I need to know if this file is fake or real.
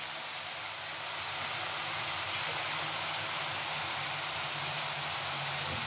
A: real